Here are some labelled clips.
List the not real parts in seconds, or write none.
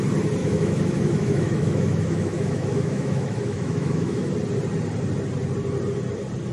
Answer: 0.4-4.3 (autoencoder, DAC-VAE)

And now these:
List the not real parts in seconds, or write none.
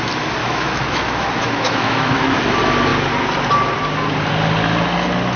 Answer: 0.4-2.4 (autoencoder, DAC-VAE)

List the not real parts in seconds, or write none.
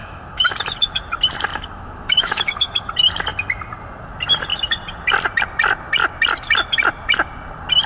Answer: 0.0-0.5 (autoencoder, DAC-VAE); 1.5-2.9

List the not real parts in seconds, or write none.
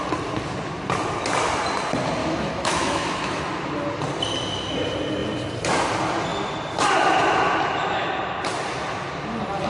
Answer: 2.2-3.4 (autoencoder, DAC-VAE)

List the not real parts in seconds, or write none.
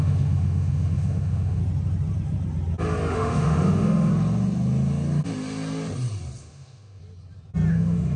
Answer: 0.0-1.6 (autoencoder, DAC-VAE); 3.1-4.1; 6.4-7.0; 7.7-8.2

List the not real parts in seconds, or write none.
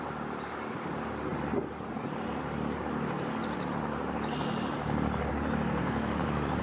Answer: 5.8-6.6 (autoencoder, DAC-VAE)